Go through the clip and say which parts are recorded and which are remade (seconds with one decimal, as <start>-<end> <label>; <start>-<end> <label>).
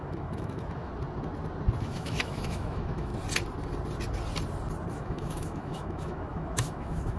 0.0-0.9 remade; 0.9-1.8 recorded; 1.8-3.1 remade; 3.1-4.9 recorded; 4.9-7.2 remade